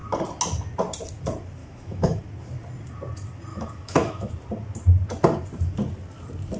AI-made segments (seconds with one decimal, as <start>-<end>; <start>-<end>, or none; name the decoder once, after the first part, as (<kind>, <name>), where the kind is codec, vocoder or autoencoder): 1.6-2.2 (autoencoder, DAC-VAE); 3.5-4.3